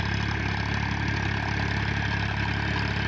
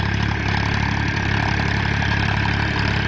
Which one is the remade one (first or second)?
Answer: second